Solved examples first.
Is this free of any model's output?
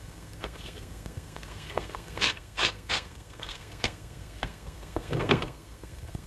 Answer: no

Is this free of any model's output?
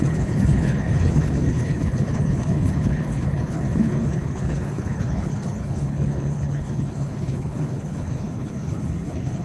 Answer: no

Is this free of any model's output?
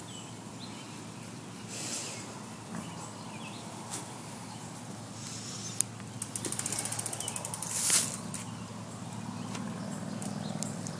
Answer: yes